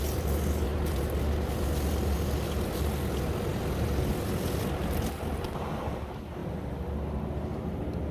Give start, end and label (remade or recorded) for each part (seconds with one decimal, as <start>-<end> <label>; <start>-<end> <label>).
0.0-8.1 recorded